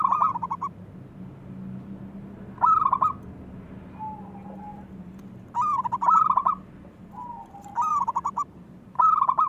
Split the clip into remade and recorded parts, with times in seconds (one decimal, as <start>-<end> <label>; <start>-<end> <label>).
0.0-4.7 recorded; 4.7-6.5 remade; 6.5-7.9 recorded; 7.9-9.0 remade; 9.0-9.5 recorded